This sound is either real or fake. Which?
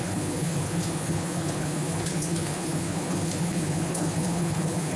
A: fake